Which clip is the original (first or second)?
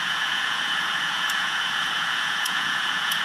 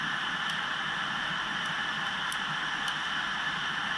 second